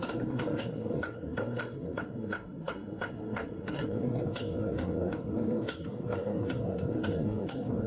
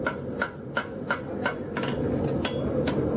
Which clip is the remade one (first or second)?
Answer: first